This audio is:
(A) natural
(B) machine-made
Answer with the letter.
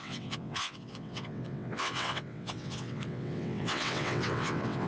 B